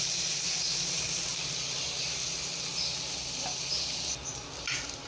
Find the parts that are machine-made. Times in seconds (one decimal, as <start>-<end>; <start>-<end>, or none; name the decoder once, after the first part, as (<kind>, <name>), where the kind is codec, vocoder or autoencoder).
none